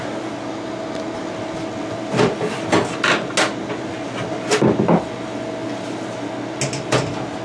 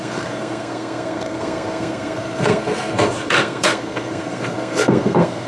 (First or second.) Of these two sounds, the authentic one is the first